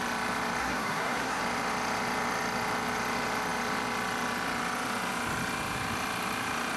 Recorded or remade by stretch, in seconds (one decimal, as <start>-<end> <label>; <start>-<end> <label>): 0.0-0.6 recorded; 0.6-1.4 remade; 1.4-6.8 recorded